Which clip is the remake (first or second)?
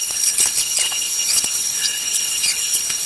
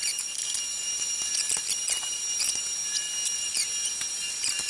first